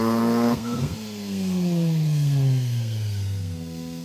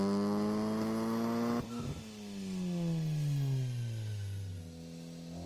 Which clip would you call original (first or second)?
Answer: second